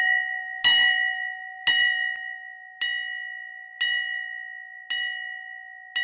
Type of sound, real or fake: real